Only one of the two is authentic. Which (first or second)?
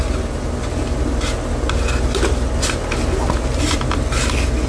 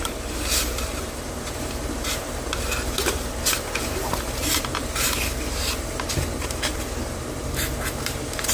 first